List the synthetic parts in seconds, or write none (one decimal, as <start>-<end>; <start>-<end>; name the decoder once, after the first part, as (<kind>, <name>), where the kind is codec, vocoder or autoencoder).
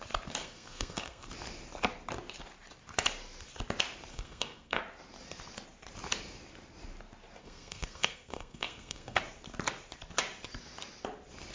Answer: 0.4-1.3 (codec, SNAC); 4.1-4.8; 7.4-9.2